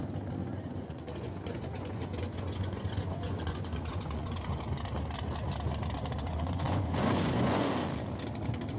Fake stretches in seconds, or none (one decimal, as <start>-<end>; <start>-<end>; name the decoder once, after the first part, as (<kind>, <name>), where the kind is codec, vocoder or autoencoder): 0.4-4.6 (vocoder, Vocos); 6.2-7.7

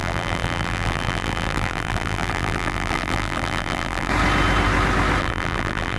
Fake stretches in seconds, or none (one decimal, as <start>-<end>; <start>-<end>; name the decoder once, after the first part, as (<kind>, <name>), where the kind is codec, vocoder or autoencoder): 0.0-4.1 (vocoder, BigVGAN v2); 5.2-6.0

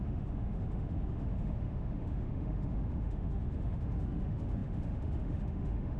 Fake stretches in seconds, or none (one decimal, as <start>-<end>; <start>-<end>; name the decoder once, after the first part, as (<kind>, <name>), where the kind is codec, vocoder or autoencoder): 0.0-6.0 (autoencoder, DAC-VAE)

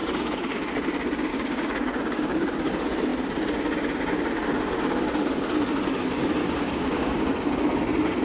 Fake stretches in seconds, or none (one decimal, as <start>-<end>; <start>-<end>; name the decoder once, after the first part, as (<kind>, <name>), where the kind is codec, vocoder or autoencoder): 0.0-0.7 (codec, DAC); 1.3-2.7; 6.4-7.3

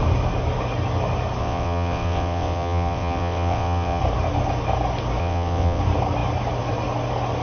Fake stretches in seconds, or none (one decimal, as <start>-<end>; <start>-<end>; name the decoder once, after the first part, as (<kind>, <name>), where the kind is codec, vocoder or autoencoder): 1.4-4.0 (vocoder, WaveNeXt); 5.2-5.8

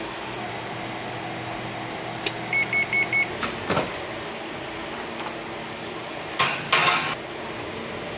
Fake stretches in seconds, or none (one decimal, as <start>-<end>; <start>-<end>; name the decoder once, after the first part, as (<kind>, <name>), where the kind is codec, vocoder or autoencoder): none